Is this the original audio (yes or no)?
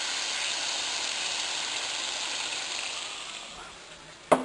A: yes